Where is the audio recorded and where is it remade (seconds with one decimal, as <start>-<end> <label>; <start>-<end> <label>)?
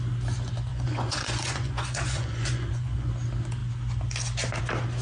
0.0-0.7 recorded; 0.7-3.1 remade; 3.1-5.0 recorded